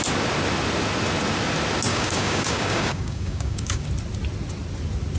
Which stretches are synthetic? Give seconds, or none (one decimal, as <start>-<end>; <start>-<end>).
1.9-3.9